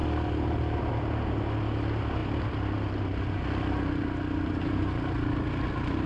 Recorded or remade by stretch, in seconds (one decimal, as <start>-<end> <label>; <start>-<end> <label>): 0.0-6.1 recorded